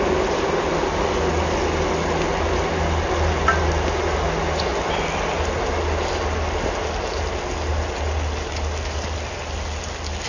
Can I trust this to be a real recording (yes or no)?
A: yes